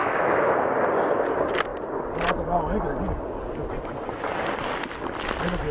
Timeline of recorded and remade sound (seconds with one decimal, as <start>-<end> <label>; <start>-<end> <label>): 0.0-0.5 remade; 0.5-5.7 recorded